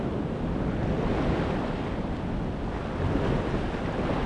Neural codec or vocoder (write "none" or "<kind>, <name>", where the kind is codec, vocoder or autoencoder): none